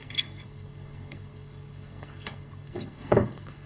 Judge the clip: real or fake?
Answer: fake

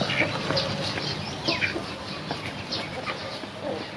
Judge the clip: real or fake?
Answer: real